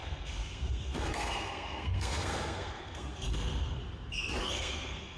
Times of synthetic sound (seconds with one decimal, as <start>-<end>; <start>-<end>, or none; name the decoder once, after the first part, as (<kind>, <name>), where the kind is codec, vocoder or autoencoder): 0.0-3.8 (codec, SNAC); 4.4-5.2